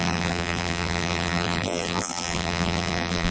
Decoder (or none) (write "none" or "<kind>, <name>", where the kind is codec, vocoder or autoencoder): vocoder, BigVGAN v2